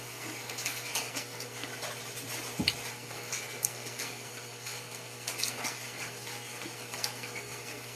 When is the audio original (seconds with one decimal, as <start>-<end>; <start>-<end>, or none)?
1.7-2.9